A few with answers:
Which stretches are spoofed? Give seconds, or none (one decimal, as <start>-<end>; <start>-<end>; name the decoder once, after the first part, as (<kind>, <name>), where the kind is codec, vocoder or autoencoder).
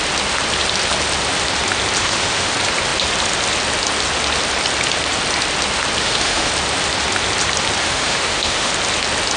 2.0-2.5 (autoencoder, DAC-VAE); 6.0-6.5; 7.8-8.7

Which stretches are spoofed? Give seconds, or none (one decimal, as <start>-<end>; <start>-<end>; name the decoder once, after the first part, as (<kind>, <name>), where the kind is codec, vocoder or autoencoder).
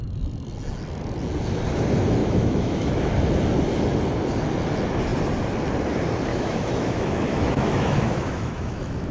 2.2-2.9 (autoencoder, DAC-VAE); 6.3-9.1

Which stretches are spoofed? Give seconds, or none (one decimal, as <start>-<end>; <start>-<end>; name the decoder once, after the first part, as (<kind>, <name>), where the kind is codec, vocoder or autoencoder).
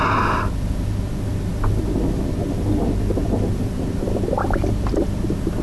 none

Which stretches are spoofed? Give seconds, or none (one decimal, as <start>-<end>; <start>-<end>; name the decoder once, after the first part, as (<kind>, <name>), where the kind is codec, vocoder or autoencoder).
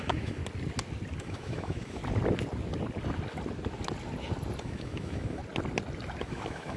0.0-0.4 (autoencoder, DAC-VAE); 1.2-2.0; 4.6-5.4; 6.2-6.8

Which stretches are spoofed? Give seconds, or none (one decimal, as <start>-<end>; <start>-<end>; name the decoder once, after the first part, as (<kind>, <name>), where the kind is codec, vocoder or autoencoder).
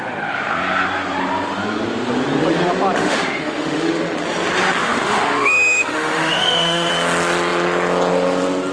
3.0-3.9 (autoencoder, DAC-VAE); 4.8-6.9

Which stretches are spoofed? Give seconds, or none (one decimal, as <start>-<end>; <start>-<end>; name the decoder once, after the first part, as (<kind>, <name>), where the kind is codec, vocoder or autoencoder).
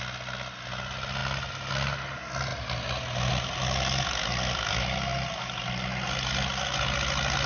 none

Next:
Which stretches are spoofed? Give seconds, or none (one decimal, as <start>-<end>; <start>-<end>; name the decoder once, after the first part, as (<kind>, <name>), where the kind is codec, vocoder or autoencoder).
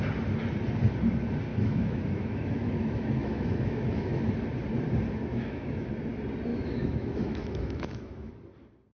1.5-4.3 (autoencoder, DAC-VAE); 5.2-5.9; 6.5-8.3